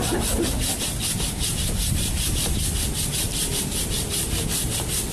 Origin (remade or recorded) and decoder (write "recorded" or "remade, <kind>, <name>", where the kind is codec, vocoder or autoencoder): recorded